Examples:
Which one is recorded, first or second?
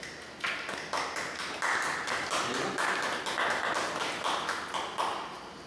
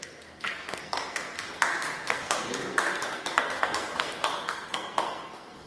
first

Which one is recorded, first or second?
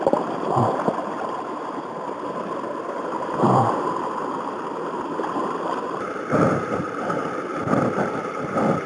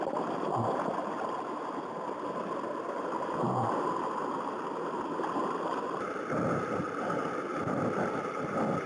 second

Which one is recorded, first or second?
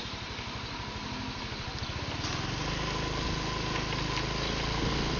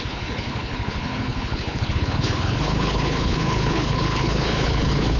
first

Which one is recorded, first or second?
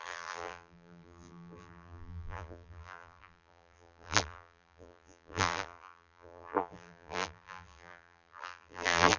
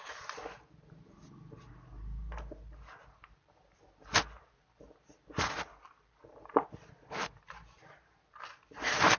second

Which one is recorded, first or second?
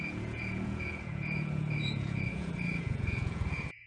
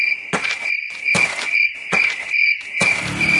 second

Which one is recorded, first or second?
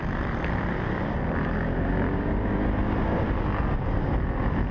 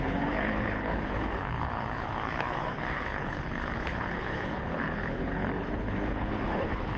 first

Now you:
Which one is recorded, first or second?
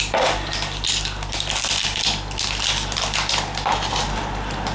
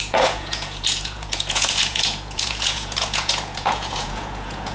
first